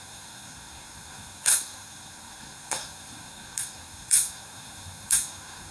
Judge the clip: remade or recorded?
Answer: remade